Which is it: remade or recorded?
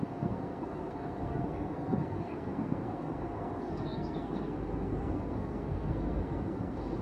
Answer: remade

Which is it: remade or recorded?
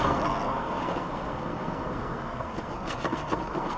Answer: remade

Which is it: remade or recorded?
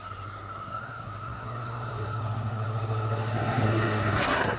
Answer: remade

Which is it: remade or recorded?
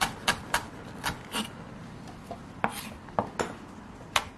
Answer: recorded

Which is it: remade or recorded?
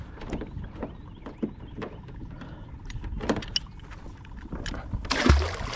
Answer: recorded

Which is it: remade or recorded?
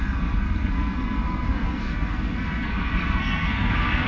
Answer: remade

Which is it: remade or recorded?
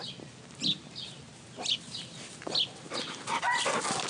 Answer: recorded